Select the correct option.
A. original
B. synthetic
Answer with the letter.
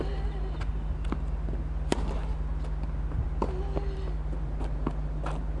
A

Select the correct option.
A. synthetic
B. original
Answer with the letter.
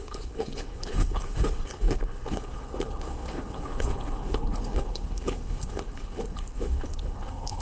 A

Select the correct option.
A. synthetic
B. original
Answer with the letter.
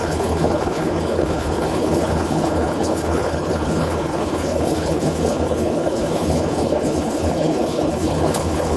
A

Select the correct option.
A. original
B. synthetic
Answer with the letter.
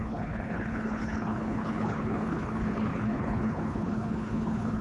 B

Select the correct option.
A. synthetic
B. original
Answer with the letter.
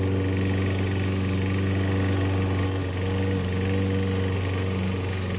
B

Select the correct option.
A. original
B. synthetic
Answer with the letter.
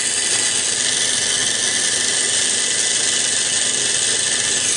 A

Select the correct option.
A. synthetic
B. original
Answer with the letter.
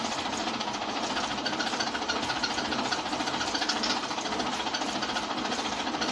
B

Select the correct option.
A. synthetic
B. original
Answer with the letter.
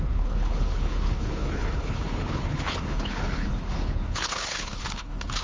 A